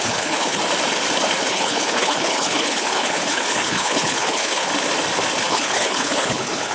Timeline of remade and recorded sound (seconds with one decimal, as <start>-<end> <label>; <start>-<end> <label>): 0.0-0.6 remade; 0.6-1.5 recorded; 1.5-4.7 remade; 4.7-5.5 recorded; 5.5-6.7 remade

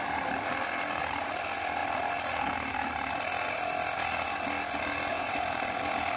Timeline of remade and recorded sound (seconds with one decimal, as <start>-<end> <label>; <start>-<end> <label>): 0.0-5.1 recorded; 5.1-5.8 remade; 5.8-6.2 recorded